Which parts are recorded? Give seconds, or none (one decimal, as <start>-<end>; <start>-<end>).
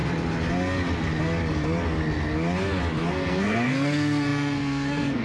0.0-3.1